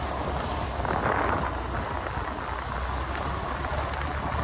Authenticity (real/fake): real